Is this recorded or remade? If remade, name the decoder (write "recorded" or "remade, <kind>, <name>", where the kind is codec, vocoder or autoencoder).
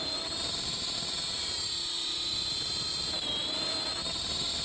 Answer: remade, vocoder, BigVGAN v2